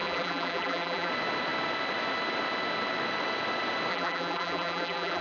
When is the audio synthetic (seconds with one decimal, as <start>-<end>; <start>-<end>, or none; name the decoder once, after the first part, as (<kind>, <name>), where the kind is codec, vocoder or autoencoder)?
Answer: 0.0-1.1 (vocoder, BigVGAN v2); 3.9-5.2